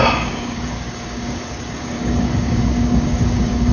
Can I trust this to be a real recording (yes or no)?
no